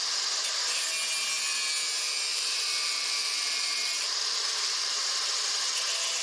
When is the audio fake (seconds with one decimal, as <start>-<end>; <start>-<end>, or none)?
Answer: 2.3-5.7